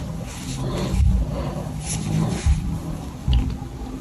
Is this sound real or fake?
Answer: real